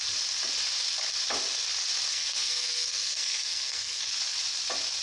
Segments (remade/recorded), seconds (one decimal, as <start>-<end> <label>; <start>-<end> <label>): 0.0-2.1 recorded; 2.1-4.1 remade; 4.1-5.0 recorded